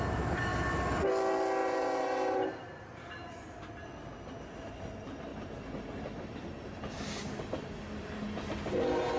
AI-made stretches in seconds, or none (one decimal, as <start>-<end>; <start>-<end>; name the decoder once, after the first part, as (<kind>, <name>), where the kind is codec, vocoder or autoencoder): 1.6-3.6 (vocoder, BigVGAN v2)